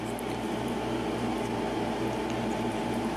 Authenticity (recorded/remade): remade